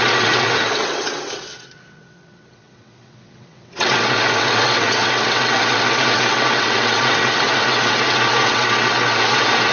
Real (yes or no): no